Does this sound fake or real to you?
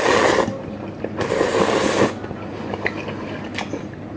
real